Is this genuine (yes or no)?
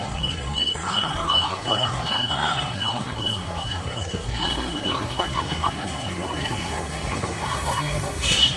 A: no